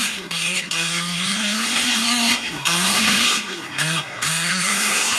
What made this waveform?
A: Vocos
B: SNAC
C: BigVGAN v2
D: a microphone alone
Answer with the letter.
B